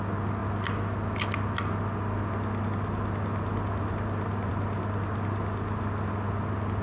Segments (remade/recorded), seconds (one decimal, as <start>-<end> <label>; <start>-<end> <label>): 0.0-6.8 recorded